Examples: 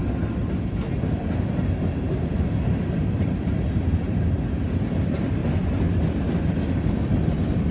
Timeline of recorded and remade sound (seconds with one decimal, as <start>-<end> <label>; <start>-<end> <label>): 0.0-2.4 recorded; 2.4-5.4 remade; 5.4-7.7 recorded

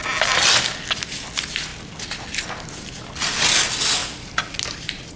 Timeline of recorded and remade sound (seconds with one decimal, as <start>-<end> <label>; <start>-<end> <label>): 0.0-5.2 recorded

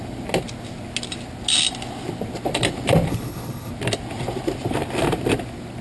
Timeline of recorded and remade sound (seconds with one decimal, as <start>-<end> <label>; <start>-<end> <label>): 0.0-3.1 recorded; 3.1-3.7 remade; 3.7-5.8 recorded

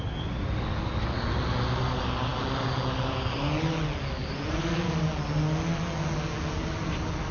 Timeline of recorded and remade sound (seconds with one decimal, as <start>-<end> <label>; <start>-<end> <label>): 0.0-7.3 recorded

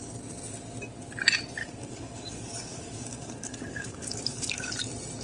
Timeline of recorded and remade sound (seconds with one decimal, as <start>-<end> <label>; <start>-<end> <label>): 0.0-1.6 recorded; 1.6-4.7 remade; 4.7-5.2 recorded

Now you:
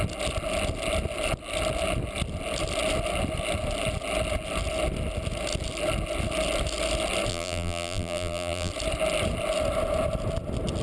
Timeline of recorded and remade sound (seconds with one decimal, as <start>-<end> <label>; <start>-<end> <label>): 0.0-7.3 recorded; 7.3-8.7 remade; 8.7-10.8 recorded

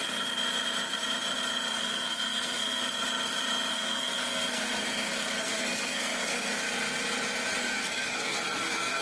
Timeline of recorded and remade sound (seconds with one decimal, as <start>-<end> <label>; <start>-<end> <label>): 0.0-1.7 recorded; 1.7-2.8 remade; 2.8-3.7 recorded; 3.7-6.6 remade; 6.6-7.6 recorded; 7.6-9.0 remade

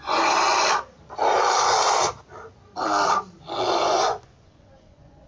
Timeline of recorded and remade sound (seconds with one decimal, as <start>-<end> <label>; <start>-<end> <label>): 0.0-0.5 remade; 0.5-3.7 recorded; 3.7-5.3 remade